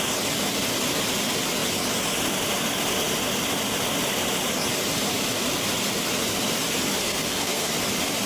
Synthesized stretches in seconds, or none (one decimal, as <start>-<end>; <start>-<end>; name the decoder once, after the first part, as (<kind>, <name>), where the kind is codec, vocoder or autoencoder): 7.0-7.7 (codec, SNAC)